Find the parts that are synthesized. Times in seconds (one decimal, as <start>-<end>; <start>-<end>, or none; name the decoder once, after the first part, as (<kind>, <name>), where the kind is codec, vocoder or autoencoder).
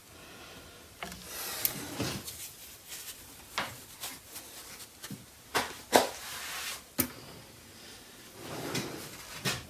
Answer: 2.6-4.4 (vocoder, BigVGAN v2)